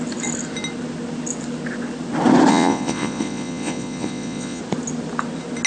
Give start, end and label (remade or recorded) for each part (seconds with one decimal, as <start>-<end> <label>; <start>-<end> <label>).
0.0-2.5 recorded; 2.5-4.6 remade; 4.6-5.7 recorded